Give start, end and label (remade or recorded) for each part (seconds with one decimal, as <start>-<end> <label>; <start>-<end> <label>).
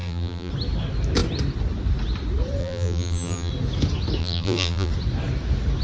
0.0-0.5 remade; 0.5-2.6 recorded; 2.6-3.5 remade; 3.5-4.2 recorded; 4.2-4.9 remade; 4.9-5.8 recorded